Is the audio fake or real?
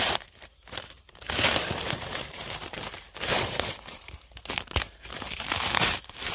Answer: fake